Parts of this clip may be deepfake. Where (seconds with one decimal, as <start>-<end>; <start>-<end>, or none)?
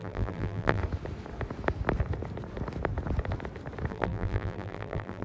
0.0-0.8; 3.9-5.2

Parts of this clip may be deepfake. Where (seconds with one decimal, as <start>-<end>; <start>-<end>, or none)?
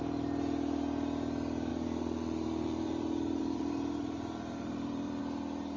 1.7-5.2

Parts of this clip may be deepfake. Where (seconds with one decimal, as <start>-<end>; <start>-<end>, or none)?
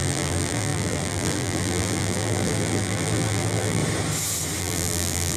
0.0-3.8; 4.6-5.4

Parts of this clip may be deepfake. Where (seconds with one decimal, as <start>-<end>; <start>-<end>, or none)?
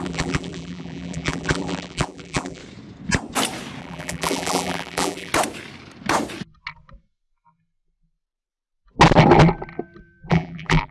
0.0-2.6; 3.8-5.3; 10.3-10.9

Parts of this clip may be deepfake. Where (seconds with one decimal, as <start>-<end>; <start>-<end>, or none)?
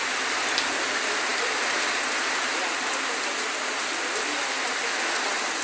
none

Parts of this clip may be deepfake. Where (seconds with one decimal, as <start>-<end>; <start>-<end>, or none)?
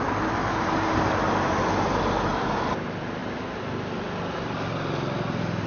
0.4-1.5